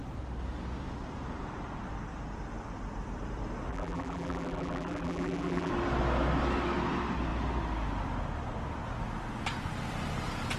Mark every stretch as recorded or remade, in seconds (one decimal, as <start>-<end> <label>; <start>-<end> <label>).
0.0-3.7 recorded; 3.7-5.7 remade; 5.7-10.6 recorded